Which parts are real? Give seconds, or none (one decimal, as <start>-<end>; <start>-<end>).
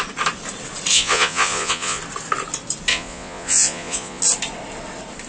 0.0-0.9; 2.0-2.9; 4.2-5.3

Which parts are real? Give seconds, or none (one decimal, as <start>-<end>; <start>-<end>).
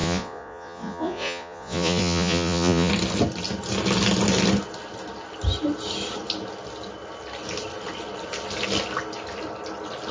2.9-10.1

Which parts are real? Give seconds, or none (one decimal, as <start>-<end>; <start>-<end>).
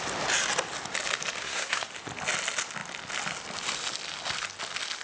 0.0-1.4; 1.9-5.0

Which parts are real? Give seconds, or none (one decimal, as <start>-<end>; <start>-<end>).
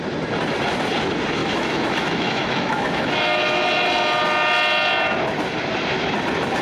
0.0-1.4; 3.1-6.6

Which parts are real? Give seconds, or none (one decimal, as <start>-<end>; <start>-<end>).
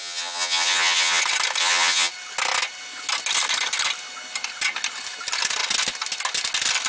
1.2-1.6; 2.1-6.9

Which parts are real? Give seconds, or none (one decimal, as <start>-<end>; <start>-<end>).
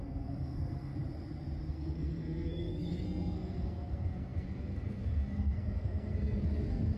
0.9-1.7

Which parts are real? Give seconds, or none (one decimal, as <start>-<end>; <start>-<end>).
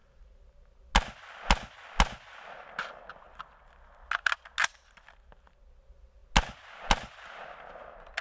0.0-8.2